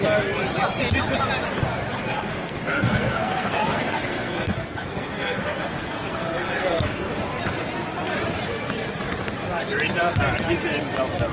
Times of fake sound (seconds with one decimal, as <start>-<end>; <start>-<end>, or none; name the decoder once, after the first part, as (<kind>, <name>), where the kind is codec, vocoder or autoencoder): 2.0-7.1 (codec, SNAC)